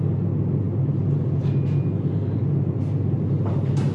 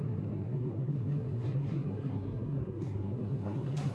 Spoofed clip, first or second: second